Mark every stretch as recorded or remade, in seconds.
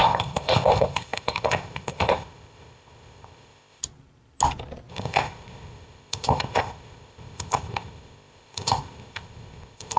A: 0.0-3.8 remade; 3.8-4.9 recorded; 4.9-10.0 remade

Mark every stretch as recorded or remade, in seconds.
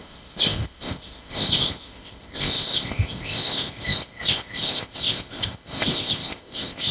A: 0.0-6.9 remade